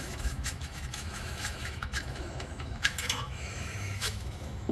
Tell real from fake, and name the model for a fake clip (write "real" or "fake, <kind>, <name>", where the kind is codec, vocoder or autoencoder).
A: fake, autoencoder, DAC-VAE